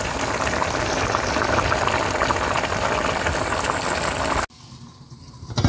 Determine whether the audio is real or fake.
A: real